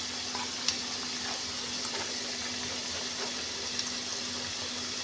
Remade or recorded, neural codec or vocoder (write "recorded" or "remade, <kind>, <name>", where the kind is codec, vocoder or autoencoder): recorded